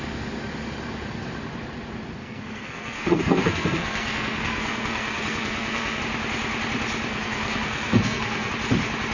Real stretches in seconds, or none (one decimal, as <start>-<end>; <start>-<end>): 0.0-2.2; 6.0-7.1; 8.5-9.1